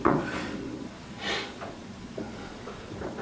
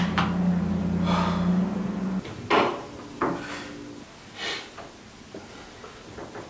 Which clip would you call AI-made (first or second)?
first